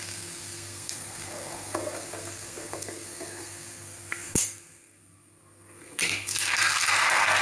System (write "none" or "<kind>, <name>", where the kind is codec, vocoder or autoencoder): codec, SNAC